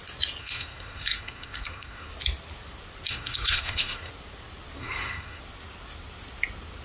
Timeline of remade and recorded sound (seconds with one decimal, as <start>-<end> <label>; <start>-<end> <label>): 0.0-0.4 recorded; 0.4-2.1 remade; 2.1-3.1 recorded; 3.1-4.1 remade; 4.1-4.8 recorded; 4.8-5.4 remade; 5.4-6.8 recorded